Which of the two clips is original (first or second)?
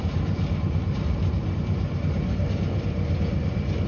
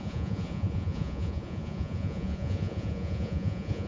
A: first